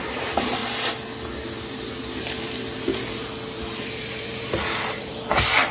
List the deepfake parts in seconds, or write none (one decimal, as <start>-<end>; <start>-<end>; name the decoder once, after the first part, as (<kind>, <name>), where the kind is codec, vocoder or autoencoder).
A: 0.0-0.6 (vocoder, BigVGAN v2); 3.8-5.7